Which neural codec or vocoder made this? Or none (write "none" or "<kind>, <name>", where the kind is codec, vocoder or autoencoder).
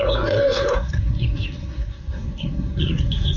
codec, SNAC